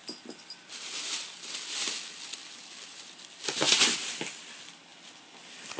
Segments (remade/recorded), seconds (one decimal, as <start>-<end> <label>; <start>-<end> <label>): 0.0-5.8 recorded